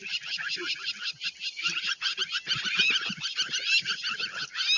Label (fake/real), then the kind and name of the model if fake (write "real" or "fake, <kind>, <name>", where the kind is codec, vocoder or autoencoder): real